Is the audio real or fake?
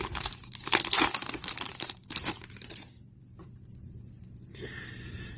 fake